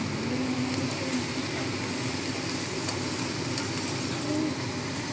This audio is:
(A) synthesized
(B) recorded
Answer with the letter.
B